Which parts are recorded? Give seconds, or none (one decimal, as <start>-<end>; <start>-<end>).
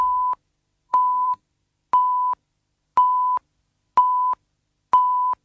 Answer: 0.0-0.9; 1.4-5.4